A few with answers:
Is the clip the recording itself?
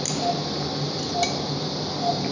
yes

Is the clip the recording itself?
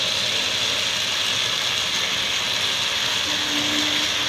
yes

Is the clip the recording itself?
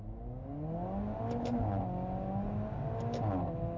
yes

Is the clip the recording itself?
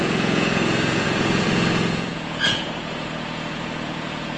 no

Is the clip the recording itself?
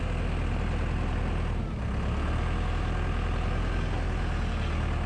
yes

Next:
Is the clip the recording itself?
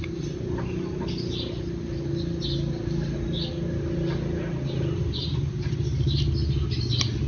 yes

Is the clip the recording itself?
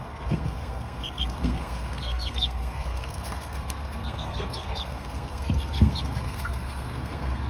no